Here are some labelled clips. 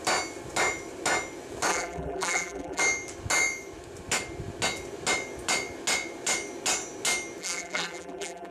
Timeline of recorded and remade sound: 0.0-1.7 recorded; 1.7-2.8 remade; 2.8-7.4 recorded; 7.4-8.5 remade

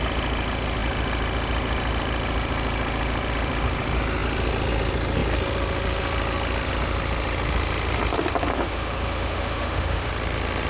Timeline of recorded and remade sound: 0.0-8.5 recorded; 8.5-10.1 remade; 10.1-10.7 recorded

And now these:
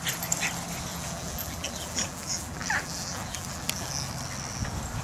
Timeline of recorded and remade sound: 0.0-0.9 recorded; 0.9-3.9 remade; 3.9-5.0 recorded

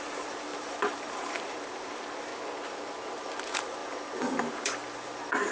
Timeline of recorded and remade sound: 0.0-2.3 remade; 2.3-3.4 recorded; 3.4-5.5 remade

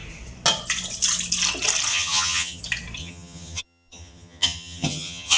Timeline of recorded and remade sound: 0.0-1.9 recorded; 1.9-2.6 remade; 2.6-3.0 recorded; 3.0-5.4 remade

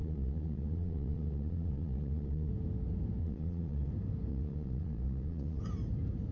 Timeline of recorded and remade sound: 0.0-2.5 remade; 2.5-3.2 recorded; 3.2-3.9 remade; 3.9-4.3 recorded; 4.3-5.6 remade; 5.6-6.3 recorded

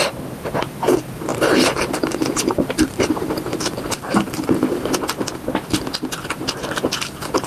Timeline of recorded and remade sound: 0.0-1.3 recorded; 1.3-4.9 remade; 4.9-7.5 recorded

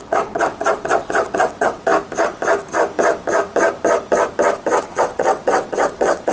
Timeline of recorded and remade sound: 0.0-1.9 remade; 1.9-4.8 recorded; 4.8-6.3 remade